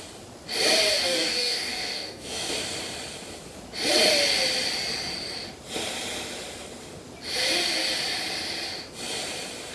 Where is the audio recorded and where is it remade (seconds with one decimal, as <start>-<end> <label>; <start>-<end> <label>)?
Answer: 0.0-0.9 recorded; 0.9-2.5 remade; 2.5-9.7 recorded